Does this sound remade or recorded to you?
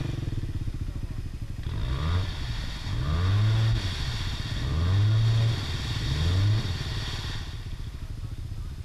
recorded